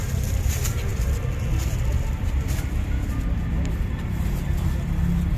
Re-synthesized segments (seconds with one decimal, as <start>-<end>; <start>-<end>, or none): none